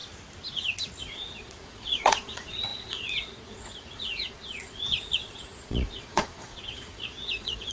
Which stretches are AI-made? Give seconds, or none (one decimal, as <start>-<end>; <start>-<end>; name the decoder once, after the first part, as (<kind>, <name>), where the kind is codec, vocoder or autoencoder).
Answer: 1.0-7.7 (vocoder, Vocos)

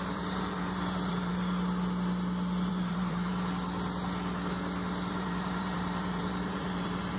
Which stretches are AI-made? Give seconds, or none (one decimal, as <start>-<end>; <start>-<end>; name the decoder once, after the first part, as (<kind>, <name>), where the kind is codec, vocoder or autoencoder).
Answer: 0.0-1.3 (vocoder, BigVGAN v2); 2.7-3.3; 5.1-7.2

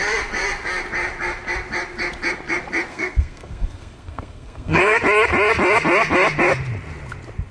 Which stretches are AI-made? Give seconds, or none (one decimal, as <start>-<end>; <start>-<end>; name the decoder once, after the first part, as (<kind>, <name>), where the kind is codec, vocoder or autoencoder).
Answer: 2.9-5.0 (codec, SNAC)

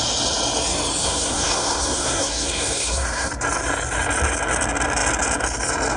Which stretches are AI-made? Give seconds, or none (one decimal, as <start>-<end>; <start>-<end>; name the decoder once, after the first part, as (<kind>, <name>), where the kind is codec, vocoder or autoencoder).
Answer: 1.0-3.3 (codec, SNAC)

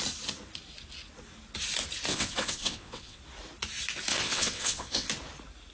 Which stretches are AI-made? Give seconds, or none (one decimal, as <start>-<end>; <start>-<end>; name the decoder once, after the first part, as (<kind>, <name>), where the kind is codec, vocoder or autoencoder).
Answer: 2.1-3.2 (vocoder, WaveNeXt); 4.1-5.1